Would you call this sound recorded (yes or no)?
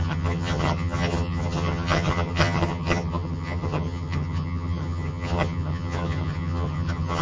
no